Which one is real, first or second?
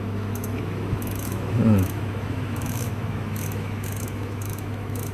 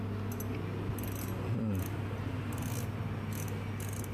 second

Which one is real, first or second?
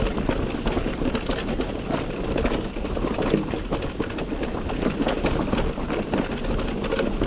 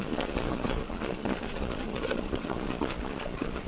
first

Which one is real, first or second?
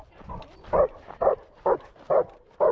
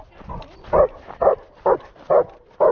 second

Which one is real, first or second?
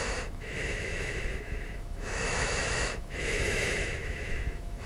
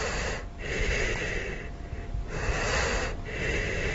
second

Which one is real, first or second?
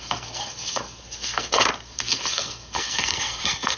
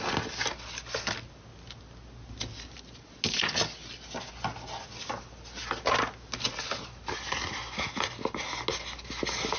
second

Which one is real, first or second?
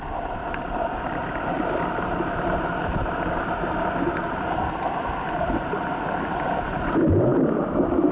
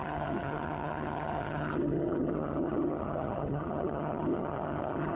first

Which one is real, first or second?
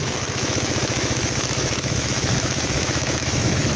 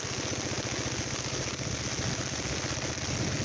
second